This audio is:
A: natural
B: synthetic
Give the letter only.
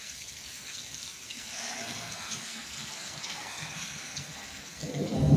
B